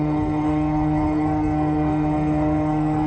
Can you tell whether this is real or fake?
fake